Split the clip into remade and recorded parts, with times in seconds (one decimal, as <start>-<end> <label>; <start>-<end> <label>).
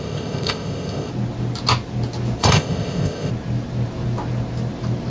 0.0-1.1 remade; 1.1-2.4 recorded; 2.4-3.3 remade; 3.3-5.1 recorded